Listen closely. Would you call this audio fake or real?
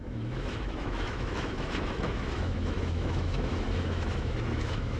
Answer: fake